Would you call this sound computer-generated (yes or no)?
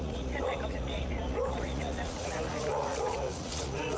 yes